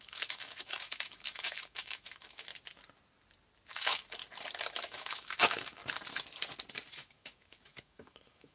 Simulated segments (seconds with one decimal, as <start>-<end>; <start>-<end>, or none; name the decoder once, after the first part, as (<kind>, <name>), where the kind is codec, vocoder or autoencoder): 0.0-2.5 (autoencoder, DAC-VAE); 3.7-4.2; 4.8-5.8; 6.9-8.5